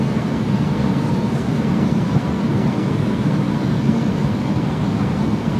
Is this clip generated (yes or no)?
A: yes